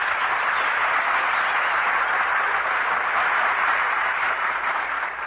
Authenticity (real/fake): fake